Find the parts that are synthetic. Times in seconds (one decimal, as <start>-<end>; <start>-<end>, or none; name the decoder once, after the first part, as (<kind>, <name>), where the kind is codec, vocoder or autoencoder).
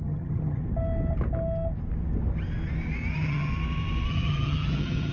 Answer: 0.0-0.6 (vocoder, HiFi-GAN); 3.1-3.5; 4.1-5.1